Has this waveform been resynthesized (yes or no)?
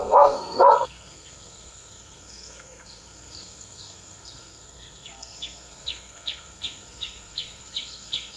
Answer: yes